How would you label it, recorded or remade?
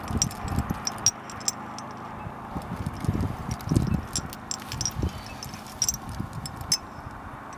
recorded